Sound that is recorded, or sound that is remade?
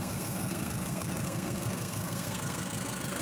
remade